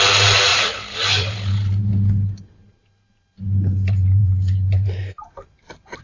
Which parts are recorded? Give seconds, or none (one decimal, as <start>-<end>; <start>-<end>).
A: 0.0-0.5; 1.9-2.6